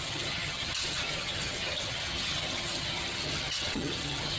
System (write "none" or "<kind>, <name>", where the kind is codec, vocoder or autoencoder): vocoder, HiFi-GAN